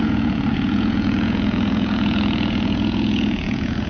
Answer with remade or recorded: remade